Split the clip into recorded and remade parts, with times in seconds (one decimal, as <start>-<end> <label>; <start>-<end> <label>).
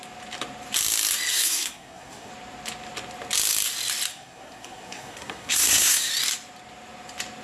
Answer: 0.0-1.3 recorded; 1.3-2.3 remade; 2.3-4.1 recorded; 4.1-6.1 remade; 6.1-7.4 recorded